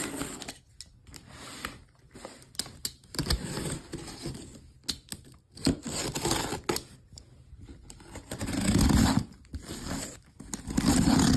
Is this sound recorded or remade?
recorded